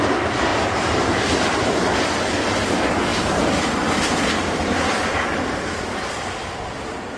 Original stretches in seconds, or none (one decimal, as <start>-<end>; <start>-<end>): 0.0-0.5; 1.2-7.2

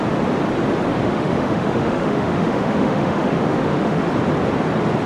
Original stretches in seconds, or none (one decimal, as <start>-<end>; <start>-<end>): 0.0-1.0; 4.1-5.1